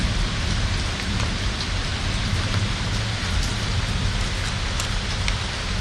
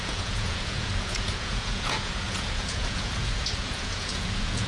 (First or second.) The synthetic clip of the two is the second